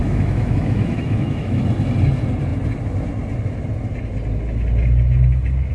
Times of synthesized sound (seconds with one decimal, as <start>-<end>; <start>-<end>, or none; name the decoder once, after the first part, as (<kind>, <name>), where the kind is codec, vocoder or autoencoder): 0.0-1.6 (autoencoder, DAC-VAE)